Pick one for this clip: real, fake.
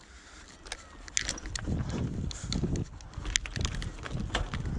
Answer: real